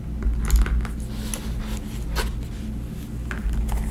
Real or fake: real